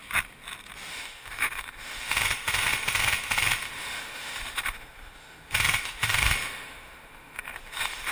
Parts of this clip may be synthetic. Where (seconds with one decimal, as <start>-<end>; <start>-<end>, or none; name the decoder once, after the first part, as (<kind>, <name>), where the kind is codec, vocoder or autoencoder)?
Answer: 0.9-8.1 (autoencoder, DAC-VAE)